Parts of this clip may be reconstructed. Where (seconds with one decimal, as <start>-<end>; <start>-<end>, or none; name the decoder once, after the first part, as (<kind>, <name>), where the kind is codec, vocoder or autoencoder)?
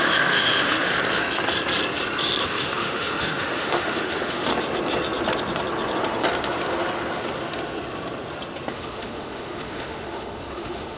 0.0-0.9 (autoencoder, DAC-VAE); 2.4-4.5; 8.7-11.0